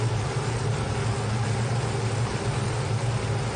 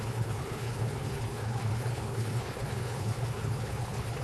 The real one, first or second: first